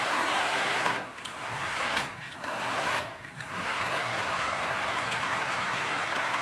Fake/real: fake